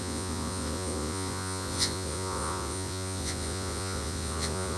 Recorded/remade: remade